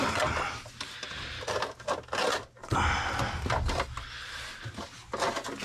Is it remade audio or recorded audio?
recorded